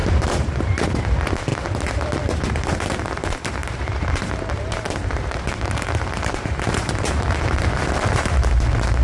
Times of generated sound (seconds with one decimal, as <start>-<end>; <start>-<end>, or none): 3.6-8.5